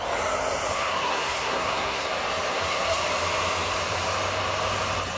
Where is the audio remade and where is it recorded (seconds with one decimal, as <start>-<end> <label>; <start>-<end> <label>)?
0.0-0.7 recorded; 0.7-2.1 remade; 2.1-2.5 recorded; 2.5-3.0 remade; 3.0-5.2 recorded